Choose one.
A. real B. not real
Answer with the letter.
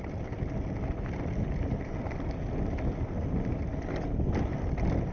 A